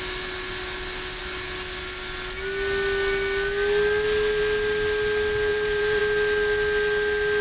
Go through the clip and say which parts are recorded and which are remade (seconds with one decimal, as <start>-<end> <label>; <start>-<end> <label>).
0.0-5.5 recorded; 5.5-6.0 remade; 6.0-7.4 recorded